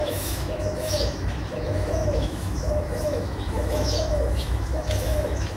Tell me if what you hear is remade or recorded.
remade